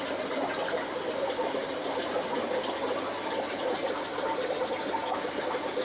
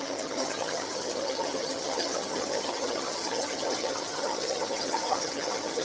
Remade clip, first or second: second